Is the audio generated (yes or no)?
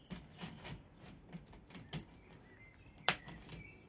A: no